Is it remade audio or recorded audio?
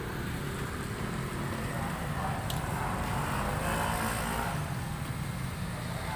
recorded